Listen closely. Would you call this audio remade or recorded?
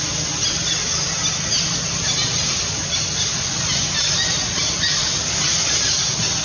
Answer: recorded